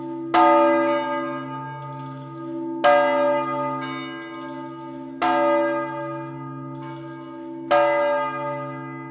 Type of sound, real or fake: real